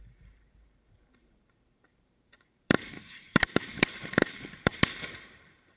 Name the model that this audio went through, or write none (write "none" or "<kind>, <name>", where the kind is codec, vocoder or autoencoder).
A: vocoder, BigVGAN v2